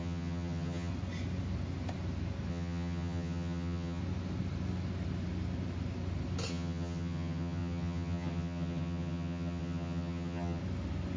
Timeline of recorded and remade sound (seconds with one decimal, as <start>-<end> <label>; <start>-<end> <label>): 0.0-0.9 remade; 0.9-2.5 recorded; 2.5-4.0 remade; 4.0-6.5 recorded; 6.5-10.6 remade; 10.6-11.2 recorded